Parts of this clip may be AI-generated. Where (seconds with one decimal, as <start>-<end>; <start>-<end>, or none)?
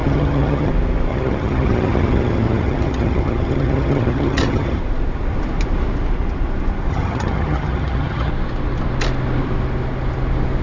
0.0-0.7; 1.1-4.8; 6.9-8.3